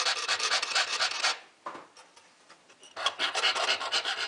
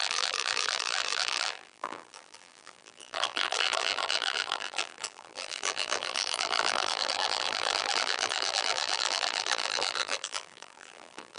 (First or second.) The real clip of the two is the first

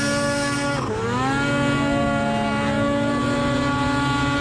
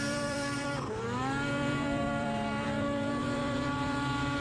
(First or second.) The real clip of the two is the first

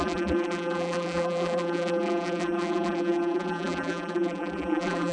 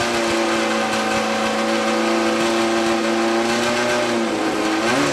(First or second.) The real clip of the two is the second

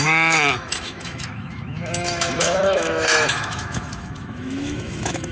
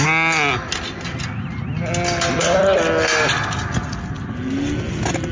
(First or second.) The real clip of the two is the second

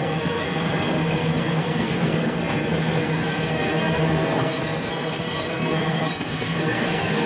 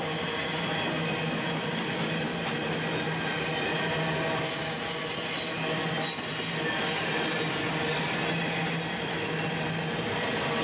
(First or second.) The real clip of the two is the second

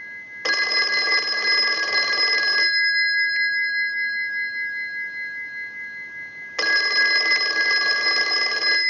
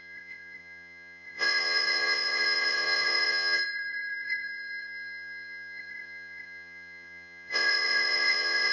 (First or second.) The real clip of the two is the first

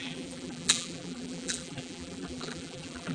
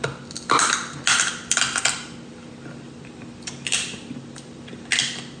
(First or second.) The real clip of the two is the second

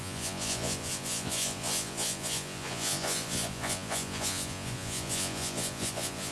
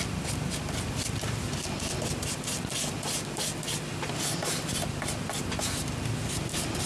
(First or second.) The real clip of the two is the second